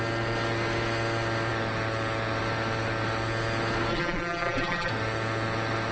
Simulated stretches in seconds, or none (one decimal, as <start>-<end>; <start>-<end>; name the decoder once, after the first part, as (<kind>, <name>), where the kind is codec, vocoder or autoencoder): 3.9-4.9 (vocoder, BigVGAN v2)